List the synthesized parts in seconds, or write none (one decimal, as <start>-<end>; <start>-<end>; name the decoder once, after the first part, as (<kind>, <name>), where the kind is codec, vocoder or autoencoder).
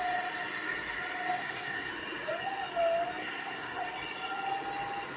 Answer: 1.4-1.9 (codec, SNAC); 3.2-3.8